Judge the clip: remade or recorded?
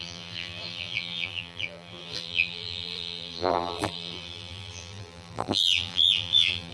remade